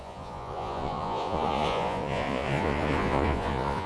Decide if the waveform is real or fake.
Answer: fake